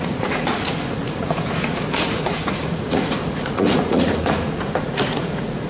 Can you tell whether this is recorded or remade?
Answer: remade